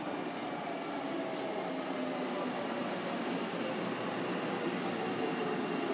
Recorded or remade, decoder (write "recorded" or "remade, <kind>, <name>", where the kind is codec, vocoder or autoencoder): recorded